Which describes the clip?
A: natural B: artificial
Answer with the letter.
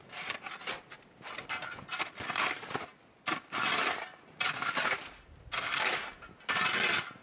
A